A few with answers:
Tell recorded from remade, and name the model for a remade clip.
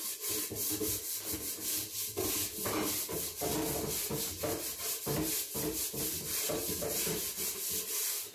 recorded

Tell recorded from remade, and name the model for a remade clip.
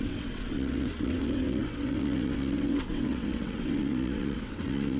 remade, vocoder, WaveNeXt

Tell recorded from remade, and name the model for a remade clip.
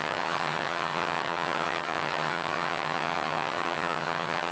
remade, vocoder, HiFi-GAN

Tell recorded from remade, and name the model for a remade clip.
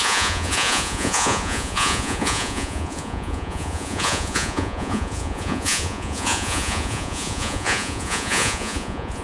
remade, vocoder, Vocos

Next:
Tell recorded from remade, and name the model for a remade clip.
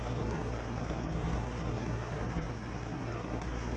remade, codec, SNAC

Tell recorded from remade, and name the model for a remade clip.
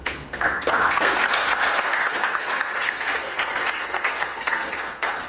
remade, codec, SNAC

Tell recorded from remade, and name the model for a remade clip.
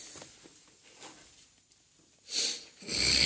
recorded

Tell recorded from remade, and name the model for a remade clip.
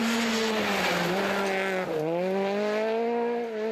recorded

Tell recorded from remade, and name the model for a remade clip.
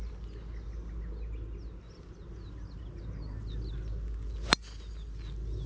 recorded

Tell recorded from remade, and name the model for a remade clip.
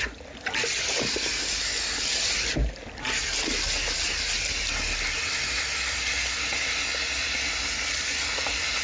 recorded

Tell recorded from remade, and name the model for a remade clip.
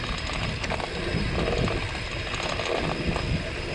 recorded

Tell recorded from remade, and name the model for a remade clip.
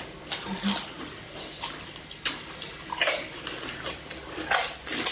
recorded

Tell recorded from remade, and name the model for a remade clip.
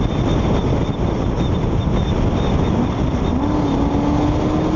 recorded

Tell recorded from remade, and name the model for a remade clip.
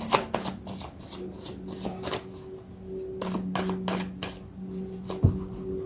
recorded